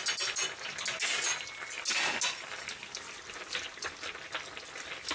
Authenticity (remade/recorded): recorded